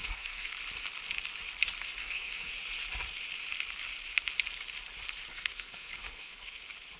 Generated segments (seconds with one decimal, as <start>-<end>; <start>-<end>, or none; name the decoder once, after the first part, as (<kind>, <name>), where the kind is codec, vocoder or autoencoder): 0.0-0.5 (codec, SNAC); 2.0-2.5; 5.3-6.6